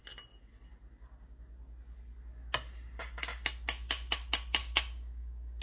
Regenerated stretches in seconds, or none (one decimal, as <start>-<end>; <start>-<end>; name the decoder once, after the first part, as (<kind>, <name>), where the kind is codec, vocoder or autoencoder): 4.6-5.6 (codec, DAC)

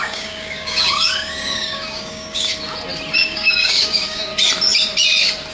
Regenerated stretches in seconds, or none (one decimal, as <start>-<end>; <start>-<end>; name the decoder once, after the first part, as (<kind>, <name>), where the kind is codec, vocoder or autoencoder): 0.0-2.5 (codec, DAC); 3.2-4.3

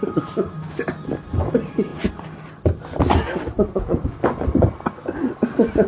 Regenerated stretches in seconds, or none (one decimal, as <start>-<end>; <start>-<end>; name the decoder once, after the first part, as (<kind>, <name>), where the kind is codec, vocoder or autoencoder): none

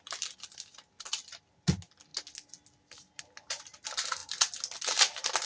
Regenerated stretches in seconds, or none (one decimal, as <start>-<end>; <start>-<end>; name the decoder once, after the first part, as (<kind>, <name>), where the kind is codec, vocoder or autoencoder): none

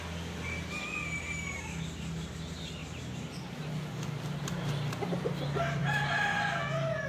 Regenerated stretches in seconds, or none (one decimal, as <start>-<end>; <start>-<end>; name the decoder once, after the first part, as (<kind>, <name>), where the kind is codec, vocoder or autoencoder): none

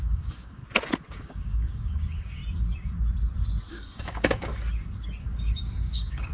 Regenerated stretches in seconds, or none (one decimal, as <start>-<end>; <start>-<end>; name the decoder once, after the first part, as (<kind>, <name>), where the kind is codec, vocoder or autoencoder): 0.0-0.6 (codec, DAC); 1.1-2.4; 3.7-4.5; 5.2-6.3